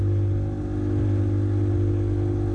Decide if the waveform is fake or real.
real